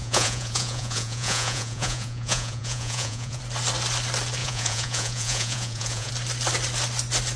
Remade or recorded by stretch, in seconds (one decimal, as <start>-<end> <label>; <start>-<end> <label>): 0.0-3.4 remade; 3.4-4.4 recorded; 4.4-6.1 remade; 6.1-7.4 recorded